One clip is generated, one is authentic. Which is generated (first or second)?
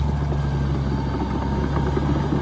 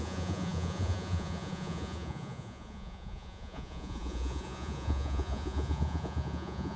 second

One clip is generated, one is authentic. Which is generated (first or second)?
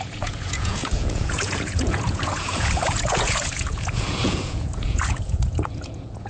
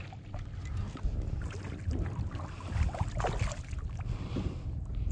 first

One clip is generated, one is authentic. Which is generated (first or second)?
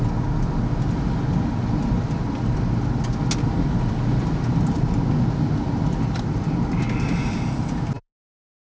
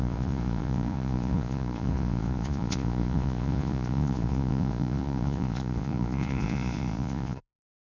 second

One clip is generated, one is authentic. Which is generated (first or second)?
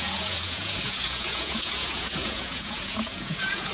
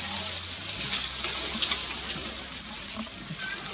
first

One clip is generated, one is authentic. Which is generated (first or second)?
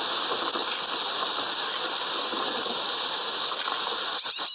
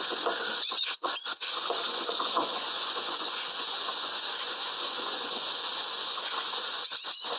second